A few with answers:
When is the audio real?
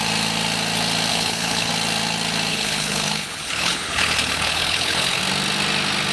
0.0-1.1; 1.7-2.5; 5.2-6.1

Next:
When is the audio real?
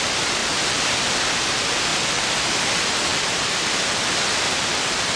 0.0-5.2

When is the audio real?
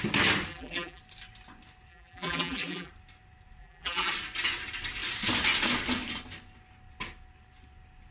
0.0-0.5; 1.0-1.9; 2.9-3.6; 4.1-8.1